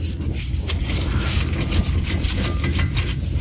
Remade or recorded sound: recorded